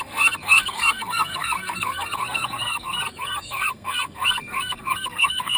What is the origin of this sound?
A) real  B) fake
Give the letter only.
B